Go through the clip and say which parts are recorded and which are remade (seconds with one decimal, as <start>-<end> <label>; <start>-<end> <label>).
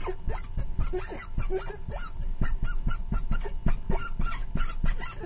0.0-1.5 recorded; 1.5-3.3 remade; 3.3-4.4 recorded; 4.4-5.3 remade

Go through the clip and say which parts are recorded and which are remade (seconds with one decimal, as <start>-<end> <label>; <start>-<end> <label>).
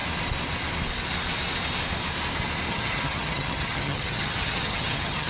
0.0-2.7 recorded; 2.7-5.3 remade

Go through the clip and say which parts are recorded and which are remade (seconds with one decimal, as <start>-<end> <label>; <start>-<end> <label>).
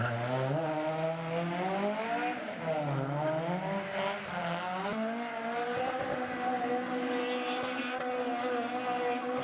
0.0-9.4 recorded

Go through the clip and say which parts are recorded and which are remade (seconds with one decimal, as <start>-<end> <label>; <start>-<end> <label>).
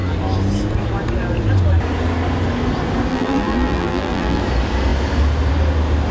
0.0-3.1 recorded; 3.1-4.4 remade; 4.4-6.1 recorded